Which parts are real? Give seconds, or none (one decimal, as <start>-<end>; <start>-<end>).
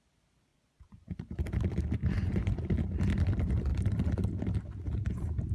0.0-0.5; 1.2-2.0; 2.6-5.5